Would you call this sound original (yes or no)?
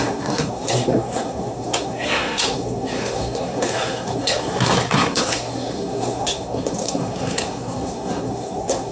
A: no